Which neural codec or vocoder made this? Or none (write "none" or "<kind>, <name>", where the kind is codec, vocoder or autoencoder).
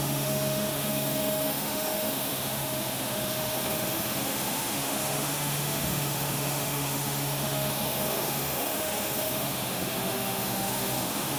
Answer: autoencoder, DAC-VAE